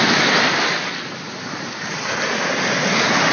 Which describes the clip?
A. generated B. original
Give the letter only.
B